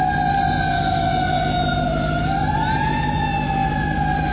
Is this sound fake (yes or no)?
no